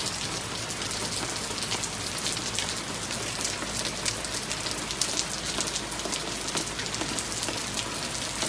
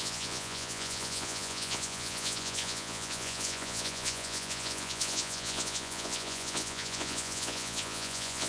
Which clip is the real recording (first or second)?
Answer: first